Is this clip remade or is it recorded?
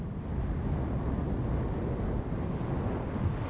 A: recorded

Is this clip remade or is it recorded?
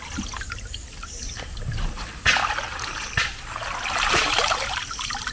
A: recorded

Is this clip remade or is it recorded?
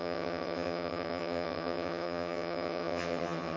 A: remade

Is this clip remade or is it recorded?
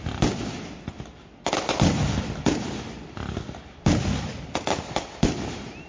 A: recorded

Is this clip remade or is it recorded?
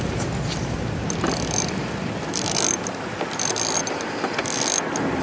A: recorded